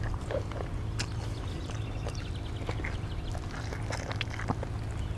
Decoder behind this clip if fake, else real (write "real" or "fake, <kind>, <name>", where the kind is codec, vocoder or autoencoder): real